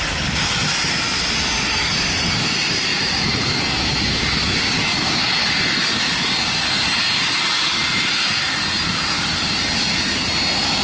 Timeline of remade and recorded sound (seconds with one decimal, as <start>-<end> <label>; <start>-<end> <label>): 0.0-2.9 recorded; 2.9-3.5 remade; 3.5-10.8 recorded